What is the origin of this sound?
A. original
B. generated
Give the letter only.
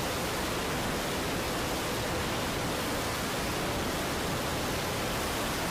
A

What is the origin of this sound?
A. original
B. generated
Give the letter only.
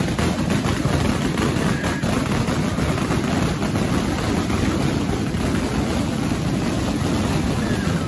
A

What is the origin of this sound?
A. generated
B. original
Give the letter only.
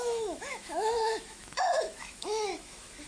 A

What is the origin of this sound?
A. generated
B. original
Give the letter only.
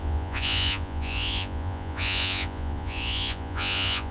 A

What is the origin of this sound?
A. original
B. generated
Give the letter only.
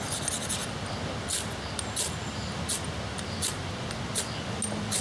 A